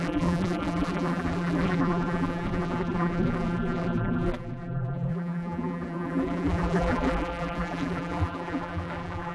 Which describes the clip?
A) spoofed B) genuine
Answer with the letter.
A